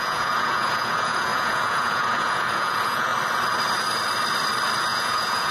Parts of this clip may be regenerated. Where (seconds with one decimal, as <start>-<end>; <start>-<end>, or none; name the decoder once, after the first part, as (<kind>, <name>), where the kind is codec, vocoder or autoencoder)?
0.0-3.1 (vocoder, Vocos); 4.8-5.5